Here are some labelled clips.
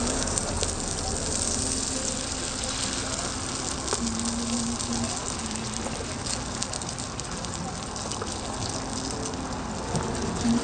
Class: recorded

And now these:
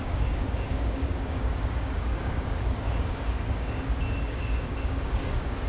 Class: remade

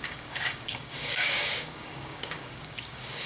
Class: remade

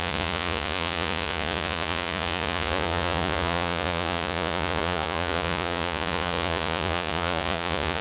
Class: remade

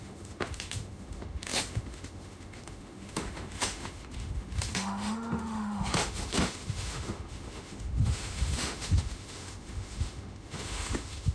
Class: remade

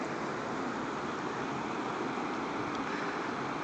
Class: recorded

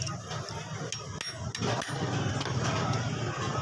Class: recorded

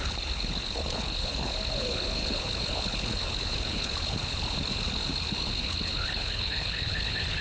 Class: remade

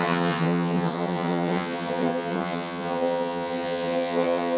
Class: remade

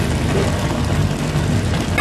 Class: recorded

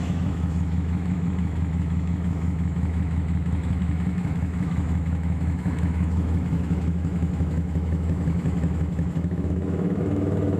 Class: remade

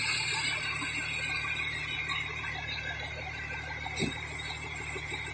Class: remade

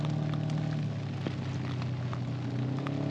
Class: recorded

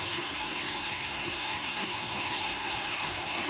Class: remade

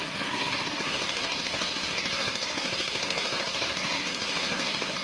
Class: remade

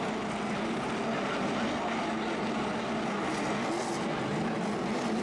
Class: recorded